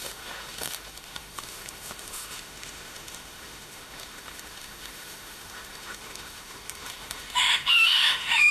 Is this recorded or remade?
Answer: remade